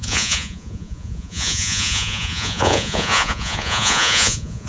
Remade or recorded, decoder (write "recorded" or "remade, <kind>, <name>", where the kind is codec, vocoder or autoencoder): remade, vocoder, Vocos